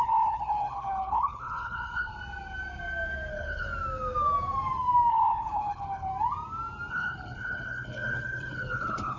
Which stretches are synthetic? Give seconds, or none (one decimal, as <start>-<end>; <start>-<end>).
0.0-2.1; 3.3-3.7; 5.1-6.1; 6.9-9.2